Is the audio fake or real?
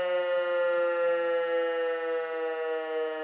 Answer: real